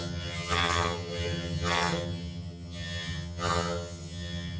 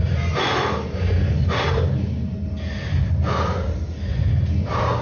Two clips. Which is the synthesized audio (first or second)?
first